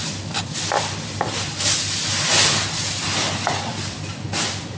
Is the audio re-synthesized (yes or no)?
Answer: no